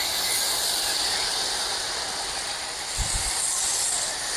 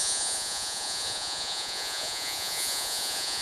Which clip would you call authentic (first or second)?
first